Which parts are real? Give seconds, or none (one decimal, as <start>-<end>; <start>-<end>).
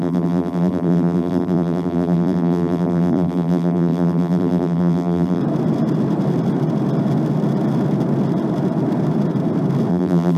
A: 5.4-9.9